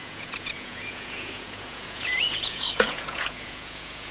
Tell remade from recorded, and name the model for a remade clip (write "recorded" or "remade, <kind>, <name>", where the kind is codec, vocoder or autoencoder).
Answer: remade, vocoder, Vocos